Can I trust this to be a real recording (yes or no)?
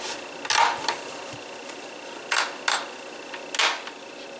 yes